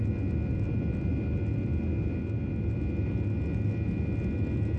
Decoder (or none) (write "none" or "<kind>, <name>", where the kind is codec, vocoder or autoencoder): none